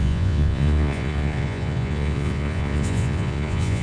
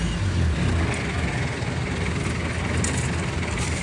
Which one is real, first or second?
second